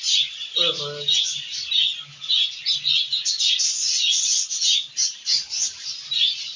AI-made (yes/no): no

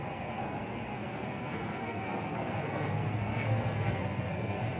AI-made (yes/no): yes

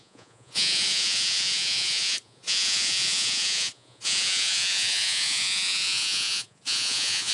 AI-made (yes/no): yes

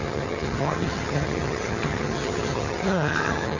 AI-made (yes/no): yes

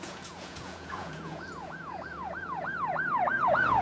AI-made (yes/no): yes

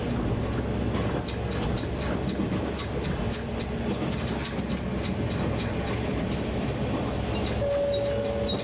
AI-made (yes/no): no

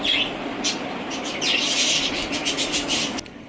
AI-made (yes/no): no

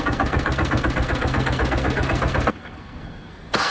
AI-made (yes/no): yes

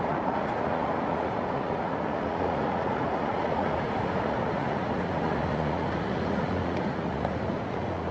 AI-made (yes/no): yes